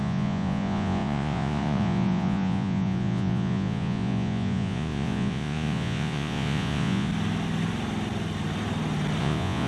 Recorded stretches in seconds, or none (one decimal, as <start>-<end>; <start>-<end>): 7.1-9.2